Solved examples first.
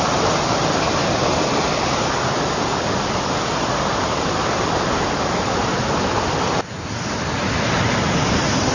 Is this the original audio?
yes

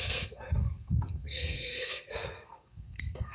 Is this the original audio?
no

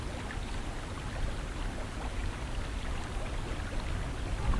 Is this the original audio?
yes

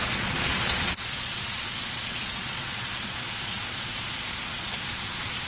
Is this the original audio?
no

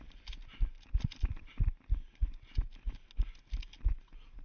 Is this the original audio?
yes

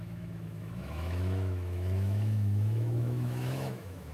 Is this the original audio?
no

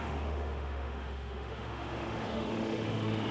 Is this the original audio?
no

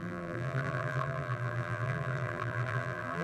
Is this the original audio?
no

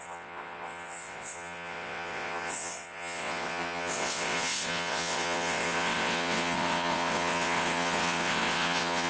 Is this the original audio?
no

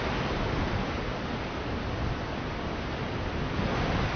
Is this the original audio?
yes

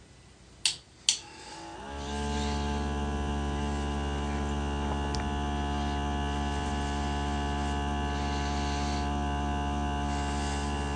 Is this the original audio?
yes